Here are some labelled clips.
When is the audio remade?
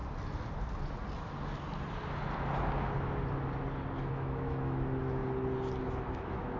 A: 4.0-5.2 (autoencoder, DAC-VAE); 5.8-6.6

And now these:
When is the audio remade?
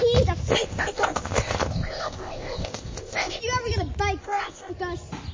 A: 0.5-3.4 (codec, ZipCodec); 4.2-4.7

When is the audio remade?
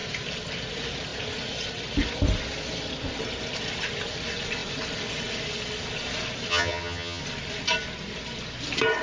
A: 6.5-7.2 (vocoder, HiFi-GAN)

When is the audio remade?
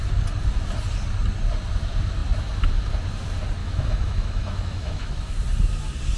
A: 3.6-5.3 (autoencoder, DAC-VAE)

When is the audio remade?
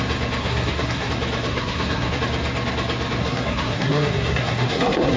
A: 0.4-1.1 (codec, SNAC); 1.5-2.2; 3.2-5.2